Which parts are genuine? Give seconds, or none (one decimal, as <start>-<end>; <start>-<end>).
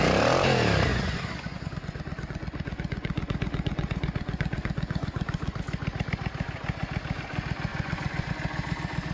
0.0-0.9; 5.6-7.7; 8.3-9.1